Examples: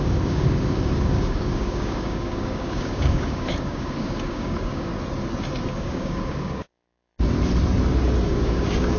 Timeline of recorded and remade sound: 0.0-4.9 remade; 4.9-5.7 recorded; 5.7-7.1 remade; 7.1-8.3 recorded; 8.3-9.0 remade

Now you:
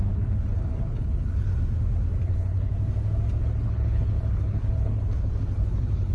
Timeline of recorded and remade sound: 0.0-1.5 remade; 1.5-2.3 recorded; 2.3-2.7 remade; 2.7-3.4 recorded; 3.4-6.1 remade

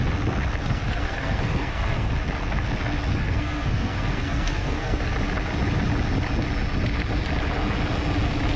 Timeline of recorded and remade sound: 0.0-0.6 recorded; 0.6-2.1 remade; 2.1-3.2 recorded; 3.2-5.0 remade; 5.0-8.6 recorded

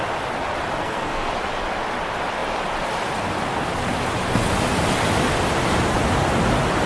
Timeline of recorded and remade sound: 0.0-0.8 recorded; 0.8-1.3 remade; 1.3-6.9 recorded

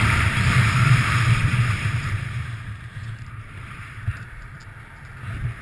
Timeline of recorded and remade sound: 0.0-4.6 remade; 4.6-5.6 recorded

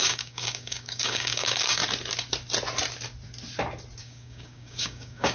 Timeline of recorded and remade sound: 0.0-1.8 remade; 1.8-4.0 recorded; 4.0-5.3 remade

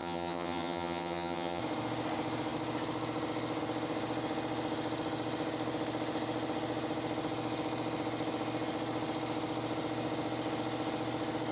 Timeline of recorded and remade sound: 0.0-1.6 remade; 1.6-11.5 recorded

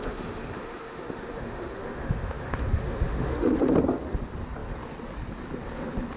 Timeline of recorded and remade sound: 0.0-3.7 remade; 3.7-6.2 recorded